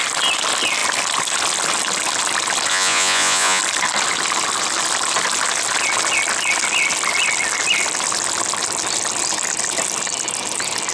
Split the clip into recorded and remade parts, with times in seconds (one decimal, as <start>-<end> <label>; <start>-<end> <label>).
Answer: 0.0-2.7 recorded; 2.7-3.6 remade; 3.6-10.9 recorded